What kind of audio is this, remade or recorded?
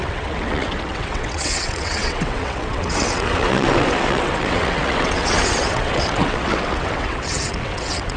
remade